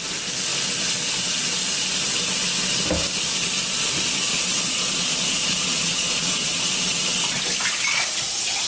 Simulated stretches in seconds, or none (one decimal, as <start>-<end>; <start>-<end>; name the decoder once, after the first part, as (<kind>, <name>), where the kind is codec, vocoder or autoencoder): 4.3-6.6 (vocoder, Vocos)

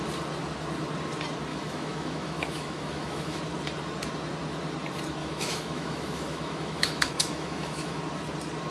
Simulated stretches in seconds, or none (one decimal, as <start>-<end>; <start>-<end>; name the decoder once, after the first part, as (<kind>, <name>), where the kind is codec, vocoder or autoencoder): 1.5-3.4 (autoencoder, DAC-VAE); 5.2-8.0

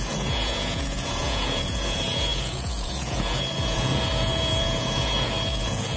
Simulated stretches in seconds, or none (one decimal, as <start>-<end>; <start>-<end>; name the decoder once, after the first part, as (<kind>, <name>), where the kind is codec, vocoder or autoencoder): 0.0-6.0 (vocoder, Vocos)

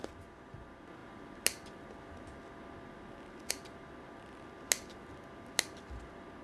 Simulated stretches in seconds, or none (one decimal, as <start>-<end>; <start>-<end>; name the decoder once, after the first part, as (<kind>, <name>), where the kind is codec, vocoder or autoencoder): none

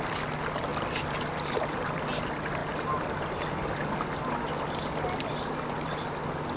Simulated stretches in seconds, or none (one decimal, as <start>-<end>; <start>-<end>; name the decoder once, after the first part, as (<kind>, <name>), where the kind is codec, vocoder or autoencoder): none